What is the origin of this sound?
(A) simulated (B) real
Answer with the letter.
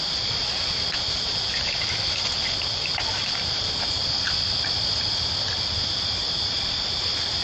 B